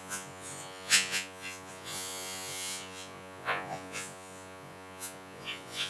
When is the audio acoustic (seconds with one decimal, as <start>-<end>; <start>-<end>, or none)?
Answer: none